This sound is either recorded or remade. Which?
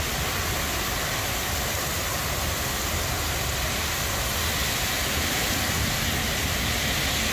recorded